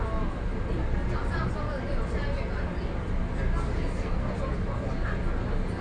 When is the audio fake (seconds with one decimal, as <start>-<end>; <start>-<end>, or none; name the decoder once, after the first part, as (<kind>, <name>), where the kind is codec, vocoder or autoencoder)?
3.7-4.4 (codec, SNAC)

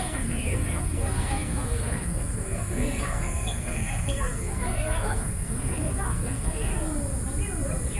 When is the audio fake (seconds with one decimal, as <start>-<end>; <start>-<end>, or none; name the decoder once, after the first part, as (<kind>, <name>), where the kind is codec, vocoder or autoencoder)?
0.0-6.7 (codec, SNAC)

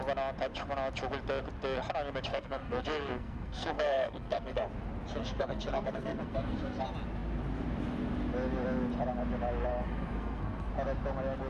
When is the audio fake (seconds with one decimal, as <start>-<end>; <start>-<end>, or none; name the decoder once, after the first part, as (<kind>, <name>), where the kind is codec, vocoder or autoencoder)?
2.3-4.7 (codec, SNAC); 5.2-6.8; 9.7-10.7